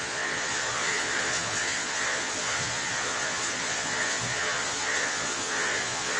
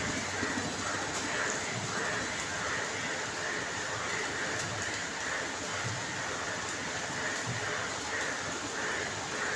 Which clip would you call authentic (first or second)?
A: second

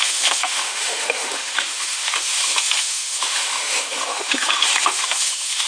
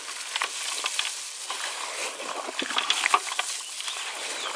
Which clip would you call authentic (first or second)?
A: second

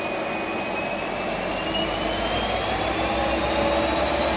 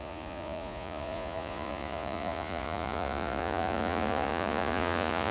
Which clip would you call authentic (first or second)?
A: first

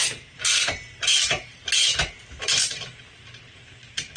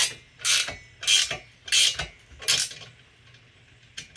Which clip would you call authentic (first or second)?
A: second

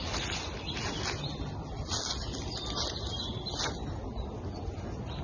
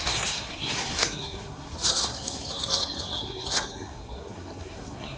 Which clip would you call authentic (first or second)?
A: first